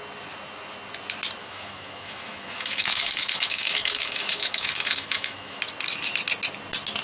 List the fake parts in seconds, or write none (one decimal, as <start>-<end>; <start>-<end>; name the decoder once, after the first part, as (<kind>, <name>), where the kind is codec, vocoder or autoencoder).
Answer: 1.4-5.6 (autoencoder, DAC-VAE)